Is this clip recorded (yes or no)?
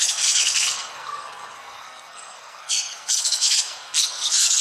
no